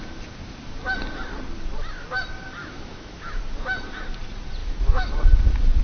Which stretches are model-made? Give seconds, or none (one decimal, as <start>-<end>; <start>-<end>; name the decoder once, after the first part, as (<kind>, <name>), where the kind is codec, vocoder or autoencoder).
2.6-3.4 (autoencoder, DAC-VAE); 4.6-5.1